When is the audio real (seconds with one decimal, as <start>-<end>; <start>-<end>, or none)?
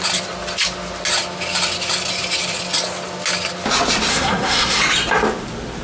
0.0-4.1; 4.8-5.8